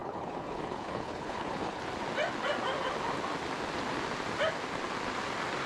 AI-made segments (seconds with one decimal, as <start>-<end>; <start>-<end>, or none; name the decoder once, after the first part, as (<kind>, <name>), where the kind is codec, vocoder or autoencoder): 0.0-1.8 (codec, HILCodec)